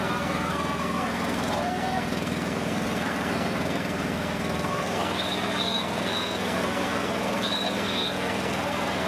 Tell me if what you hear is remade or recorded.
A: remade